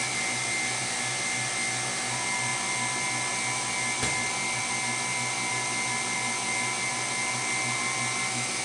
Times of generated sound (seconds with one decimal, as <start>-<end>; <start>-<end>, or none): none